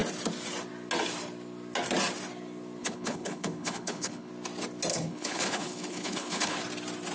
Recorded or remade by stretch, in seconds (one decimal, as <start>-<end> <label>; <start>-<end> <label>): 0.0-2.8 recorded; 2.8-4.3 remade; 4.3-4.9 recorded; 4.9-6.6 remade; 6.6-7.1 recorded